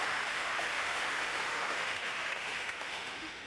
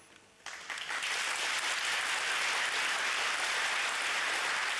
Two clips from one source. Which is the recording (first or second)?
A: second